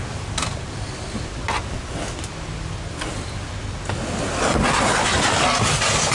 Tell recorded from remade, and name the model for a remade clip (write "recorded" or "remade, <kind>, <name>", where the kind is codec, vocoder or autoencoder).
recorded